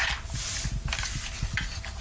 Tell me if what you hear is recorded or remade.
recorded